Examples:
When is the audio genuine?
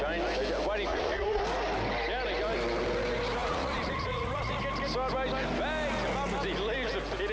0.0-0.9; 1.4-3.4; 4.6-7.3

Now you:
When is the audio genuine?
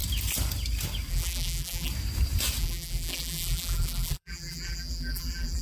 0.0-1.1; 1.9-2.6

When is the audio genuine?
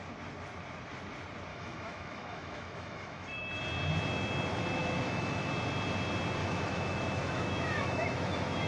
0.0-1.5; 3.6-4.8; 5.5-6.4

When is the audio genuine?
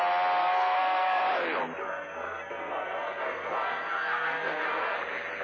0.0-0.4; 1.2-1.8; 5.0-5.4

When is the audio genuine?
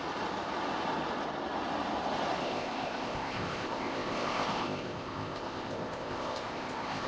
0.0-2.4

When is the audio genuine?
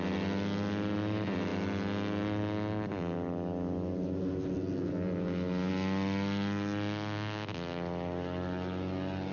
0.0-9.3